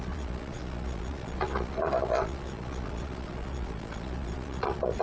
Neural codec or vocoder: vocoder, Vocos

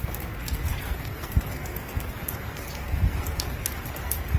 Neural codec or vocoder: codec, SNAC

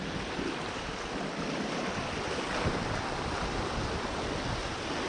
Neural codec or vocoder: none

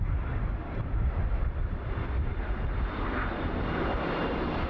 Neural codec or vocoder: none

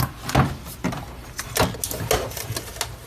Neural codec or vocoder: none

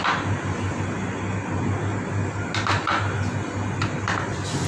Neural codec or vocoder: none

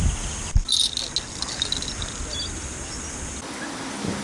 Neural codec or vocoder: none